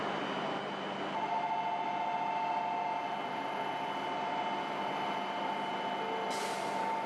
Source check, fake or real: real